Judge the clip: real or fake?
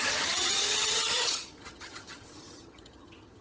fake